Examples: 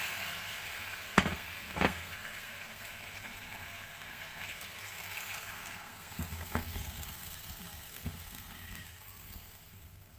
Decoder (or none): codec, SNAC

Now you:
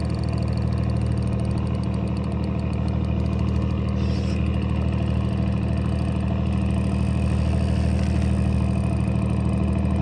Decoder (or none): none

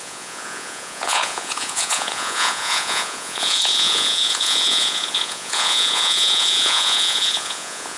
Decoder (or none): vocoder, Vocos